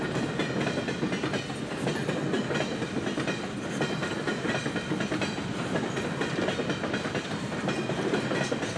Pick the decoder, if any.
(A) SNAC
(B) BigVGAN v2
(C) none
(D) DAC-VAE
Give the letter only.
C